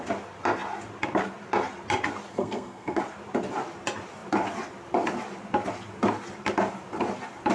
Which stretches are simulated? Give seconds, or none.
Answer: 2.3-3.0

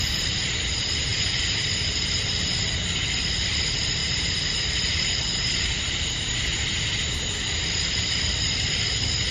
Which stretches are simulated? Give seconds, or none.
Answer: 1.1-2.5; 4.0-6.3

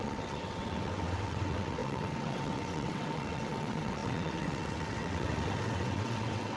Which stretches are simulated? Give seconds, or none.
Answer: 0.0-6.6

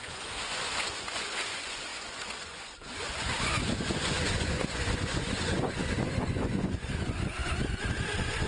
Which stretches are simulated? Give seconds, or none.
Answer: 0.0-8.5

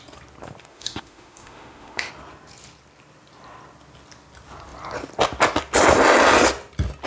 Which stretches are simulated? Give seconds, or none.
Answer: 0.7-2.1

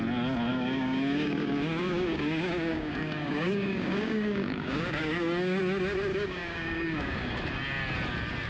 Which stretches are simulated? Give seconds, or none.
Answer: 0.5-5.6; 6.1-7.3

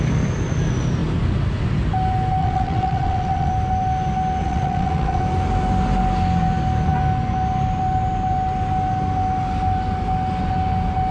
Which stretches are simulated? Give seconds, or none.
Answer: 2.4-3.5; 4.4-5.2

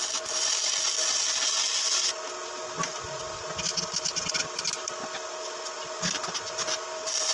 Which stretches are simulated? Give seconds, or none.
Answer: none